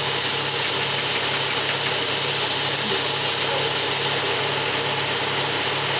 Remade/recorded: recorded